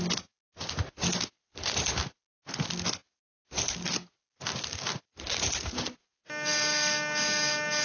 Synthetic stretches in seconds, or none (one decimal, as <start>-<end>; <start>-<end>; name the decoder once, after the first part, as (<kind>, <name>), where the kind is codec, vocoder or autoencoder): none